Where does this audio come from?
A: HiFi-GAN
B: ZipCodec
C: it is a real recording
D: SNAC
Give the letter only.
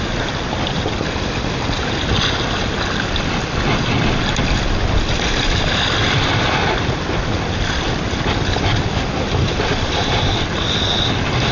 C